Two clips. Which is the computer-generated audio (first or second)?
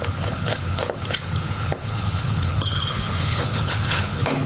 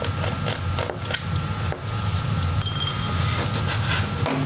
first